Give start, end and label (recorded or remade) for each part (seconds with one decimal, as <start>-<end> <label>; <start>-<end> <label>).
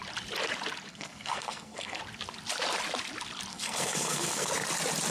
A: 0.0-0.9 recorded; 0.9-2.0 remade; 2.0-3.5 recorded; 3.5-4.5 remade; 4.5-5.1 recorded